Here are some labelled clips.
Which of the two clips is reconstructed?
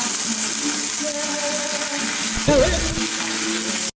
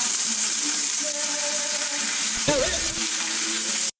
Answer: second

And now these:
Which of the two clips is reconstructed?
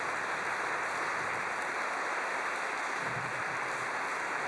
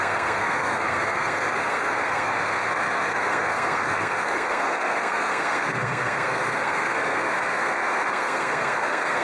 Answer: second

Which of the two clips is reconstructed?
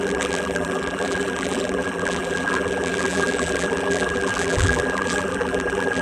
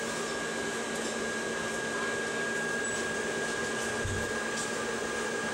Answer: first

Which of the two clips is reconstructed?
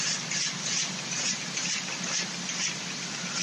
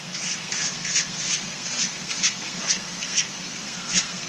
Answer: second